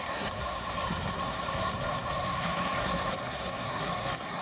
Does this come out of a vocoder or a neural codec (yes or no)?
yes